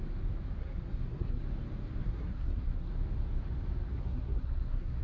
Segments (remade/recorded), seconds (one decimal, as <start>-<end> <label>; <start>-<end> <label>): 0.0-0.6 recorded; 0.6-1.4 remade; 1.4-2.0 recorded; 2.0-2.9 remade; 2.9-3.9 recorded; 3.9-5.0 remade